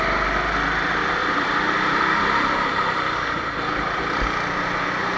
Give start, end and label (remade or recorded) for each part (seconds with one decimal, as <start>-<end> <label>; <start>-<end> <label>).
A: 0.0-1.2 recorded; 1.2-4.0 remade; 4.0-5.2 recorded